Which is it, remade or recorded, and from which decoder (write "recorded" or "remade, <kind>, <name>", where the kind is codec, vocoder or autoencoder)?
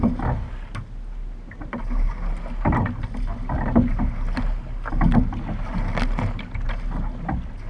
recorded